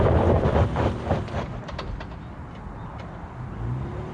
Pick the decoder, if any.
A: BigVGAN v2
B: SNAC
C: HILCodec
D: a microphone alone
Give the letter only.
D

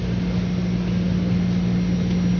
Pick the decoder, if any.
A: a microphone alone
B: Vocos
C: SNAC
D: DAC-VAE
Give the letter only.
A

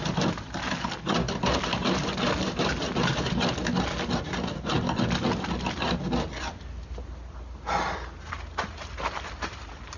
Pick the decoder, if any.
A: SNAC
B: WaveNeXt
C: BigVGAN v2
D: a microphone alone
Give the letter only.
D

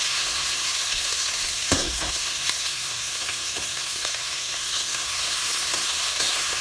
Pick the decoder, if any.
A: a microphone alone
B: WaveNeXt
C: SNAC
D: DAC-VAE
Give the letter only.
C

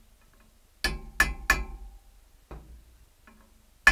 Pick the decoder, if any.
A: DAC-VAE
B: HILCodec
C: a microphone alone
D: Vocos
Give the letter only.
C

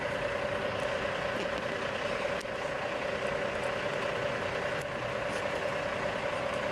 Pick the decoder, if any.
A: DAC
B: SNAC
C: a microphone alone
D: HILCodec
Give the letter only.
C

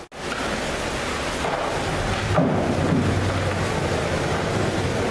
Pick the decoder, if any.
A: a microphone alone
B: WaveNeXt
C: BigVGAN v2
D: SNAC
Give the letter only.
A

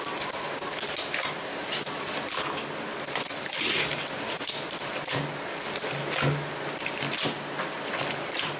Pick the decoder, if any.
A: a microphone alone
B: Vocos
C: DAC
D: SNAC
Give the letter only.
A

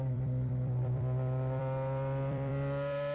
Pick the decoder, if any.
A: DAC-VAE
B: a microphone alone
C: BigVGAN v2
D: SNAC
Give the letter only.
C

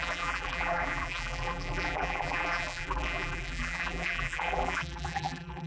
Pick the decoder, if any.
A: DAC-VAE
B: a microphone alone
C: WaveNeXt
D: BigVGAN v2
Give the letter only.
D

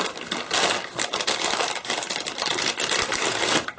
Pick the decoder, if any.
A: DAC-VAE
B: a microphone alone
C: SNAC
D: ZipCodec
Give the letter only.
B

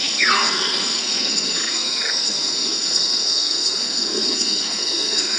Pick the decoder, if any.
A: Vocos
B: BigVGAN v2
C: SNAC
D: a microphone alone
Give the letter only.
C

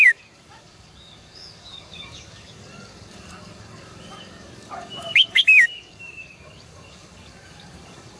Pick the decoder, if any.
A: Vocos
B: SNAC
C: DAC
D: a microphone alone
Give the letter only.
C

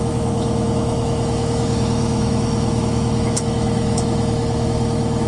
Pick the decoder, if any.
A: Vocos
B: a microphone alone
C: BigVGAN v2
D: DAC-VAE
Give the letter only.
D